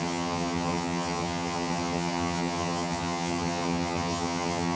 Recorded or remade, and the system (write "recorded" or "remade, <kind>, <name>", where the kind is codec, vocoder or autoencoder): remade, vocoder, HiFi-GAN